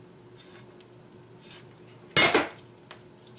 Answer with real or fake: real